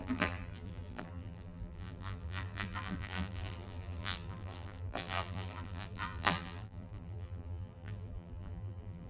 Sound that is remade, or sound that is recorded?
remade